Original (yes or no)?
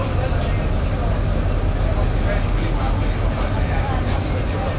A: yes